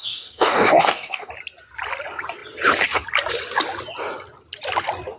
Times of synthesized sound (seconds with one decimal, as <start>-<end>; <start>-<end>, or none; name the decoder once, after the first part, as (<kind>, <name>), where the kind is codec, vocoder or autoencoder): 0.0-1.3 (codec, DAC)